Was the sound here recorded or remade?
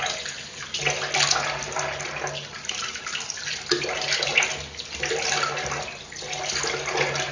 recorded